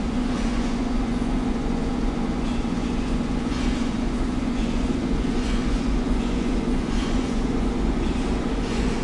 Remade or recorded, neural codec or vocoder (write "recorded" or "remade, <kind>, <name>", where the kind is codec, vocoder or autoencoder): remade, vocoder, Vocos